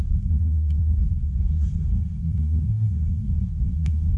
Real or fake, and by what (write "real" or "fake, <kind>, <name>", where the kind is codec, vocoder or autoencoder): fake, codec, SNAC